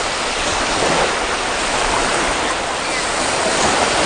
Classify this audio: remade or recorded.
recorded